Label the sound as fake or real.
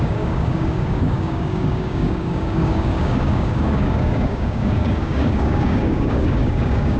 fake